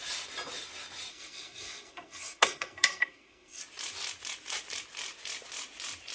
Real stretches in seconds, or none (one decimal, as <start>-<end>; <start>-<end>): 0.0-1.1; 3.6-6.1